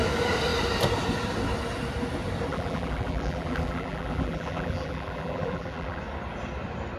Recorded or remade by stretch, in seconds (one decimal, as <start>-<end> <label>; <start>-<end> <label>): 0.0-2.5 recorded; 2.5-6.0 remade; 6.0-7.0 recorded